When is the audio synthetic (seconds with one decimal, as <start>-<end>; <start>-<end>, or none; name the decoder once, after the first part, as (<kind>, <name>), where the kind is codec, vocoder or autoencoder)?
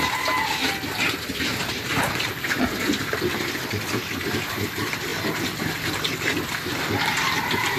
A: none